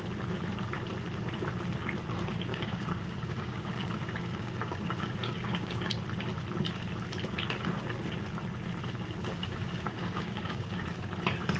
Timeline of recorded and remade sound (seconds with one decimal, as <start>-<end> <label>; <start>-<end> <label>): 0.0-2.5 recorded; 2.5-5.8 remade; 5.8-9.3 recorded; 9.3-10.8 remade; 10.8-11.6 recorded